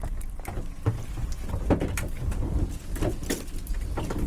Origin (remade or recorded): recorded